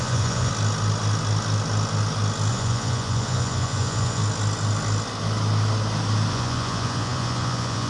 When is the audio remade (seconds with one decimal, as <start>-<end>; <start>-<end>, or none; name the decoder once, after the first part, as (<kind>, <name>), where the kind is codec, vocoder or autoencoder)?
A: 0.0-0.5 (vocoder, Vocos); 2.5-4.2; 6.3-7.9

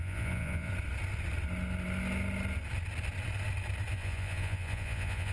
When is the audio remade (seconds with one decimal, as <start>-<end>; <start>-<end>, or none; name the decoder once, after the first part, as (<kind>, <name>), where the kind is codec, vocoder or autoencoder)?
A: 0.0-0.7 (vocoder, Vocos); 3.9-5.3

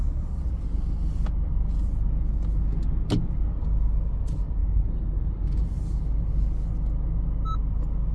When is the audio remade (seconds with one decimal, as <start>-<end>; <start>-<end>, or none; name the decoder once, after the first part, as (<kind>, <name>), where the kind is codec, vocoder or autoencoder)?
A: 4.6-6.0 (vocoder, BigVGAN v2)

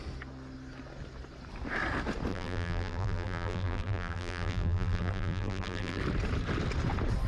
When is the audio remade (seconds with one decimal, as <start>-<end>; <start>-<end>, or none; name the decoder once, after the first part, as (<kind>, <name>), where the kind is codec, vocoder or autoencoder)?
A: 2.3-6.0 (vocoder, BigVGAN v2)

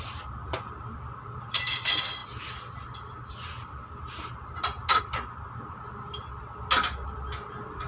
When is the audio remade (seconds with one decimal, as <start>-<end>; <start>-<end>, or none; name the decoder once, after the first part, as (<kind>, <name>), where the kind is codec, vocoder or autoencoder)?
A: none

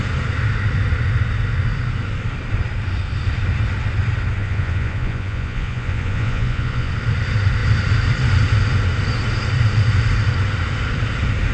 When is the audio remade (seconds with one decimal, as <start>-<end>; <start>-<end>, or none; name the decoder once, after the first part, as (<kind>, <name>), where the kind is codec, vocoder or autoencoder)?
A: 4.4-6.9 (vocoder, Vocos)

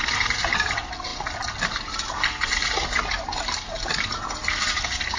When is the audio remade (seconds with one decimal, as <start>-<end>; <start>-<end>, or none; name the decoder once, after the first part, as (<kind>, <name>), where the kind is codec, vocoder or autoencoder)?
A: none